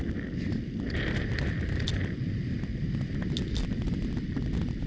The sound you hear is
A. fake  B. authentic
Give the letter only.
B